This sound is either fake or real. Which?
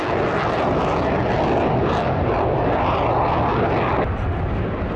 real